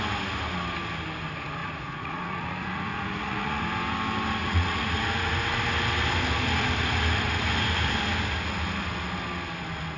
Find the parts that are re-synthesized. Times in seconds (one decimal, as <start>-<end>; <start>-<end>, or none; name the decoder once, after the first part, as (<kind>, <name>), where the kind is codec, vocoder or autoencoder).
1.6-3.6 (vocoder, Vocos); 4.4-5.0